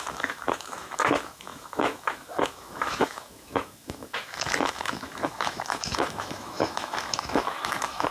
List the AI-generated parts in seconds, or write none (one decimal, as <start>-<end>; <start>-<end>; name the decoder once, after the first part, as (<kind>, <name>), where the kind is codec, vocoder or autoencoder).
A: 0.0-8.1 (autoencoder, DAC-VAE)